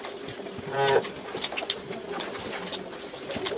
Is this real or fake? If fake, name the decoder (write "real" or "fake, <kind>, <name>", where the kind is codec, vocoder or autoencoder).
real